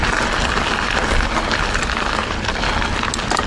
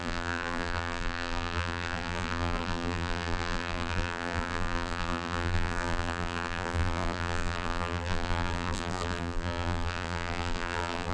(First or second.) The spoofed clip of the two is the second